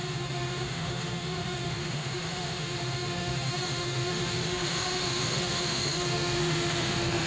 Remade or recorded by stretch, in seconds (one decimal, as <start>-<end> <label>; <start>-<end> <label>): 0.0-7.3 remade